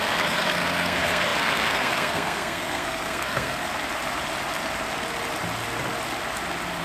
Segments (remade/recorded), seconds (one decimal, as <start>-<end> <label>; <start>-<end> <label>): 0.0-3.6 remade; 3.6-6.8 recorded